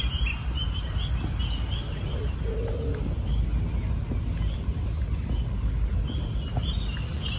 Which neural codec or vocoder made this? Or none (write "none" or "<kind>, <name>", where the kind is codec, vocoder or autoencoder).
none